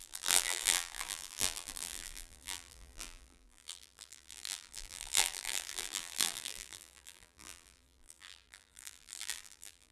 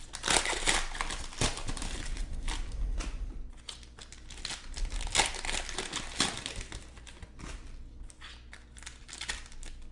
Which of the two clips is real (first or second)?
second